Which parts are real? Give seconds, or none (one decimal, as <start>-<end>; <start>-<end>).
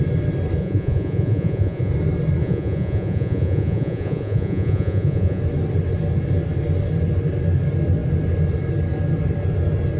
0.0-0.6; 1.9-2.4; 5.4-10.0